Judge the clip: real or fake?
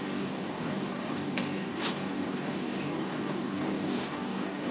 fake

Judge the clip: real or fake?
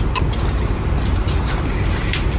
real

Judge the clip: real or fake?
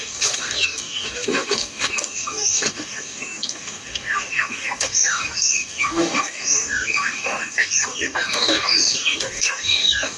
fake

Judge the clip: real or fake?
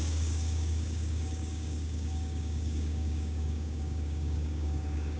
fake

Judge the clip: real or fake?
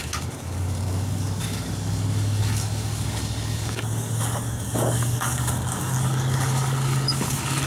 fake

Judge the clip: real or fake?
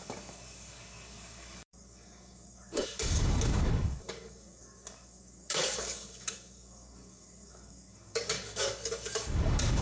fake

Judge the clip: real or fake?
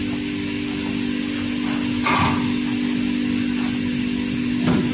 real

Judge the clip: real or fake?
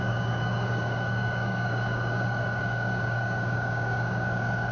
fake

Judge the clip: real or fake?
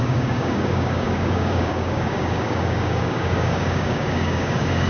fake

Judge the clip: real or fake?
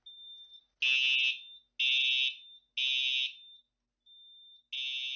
real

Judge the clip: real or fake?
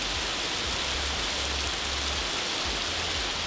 real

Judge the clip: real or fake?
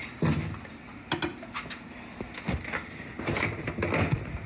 real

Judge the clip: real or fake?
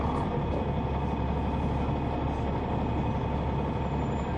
real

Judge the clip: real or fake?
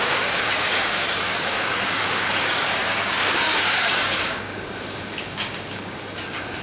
fake